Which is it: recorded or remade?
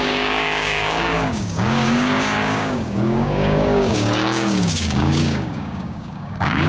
remade